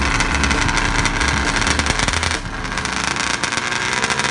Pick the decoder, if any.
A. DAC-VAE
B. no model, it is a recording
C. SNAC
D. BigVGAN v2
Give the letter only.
B